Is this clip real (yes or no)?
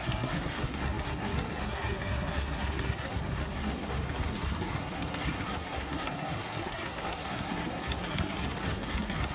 no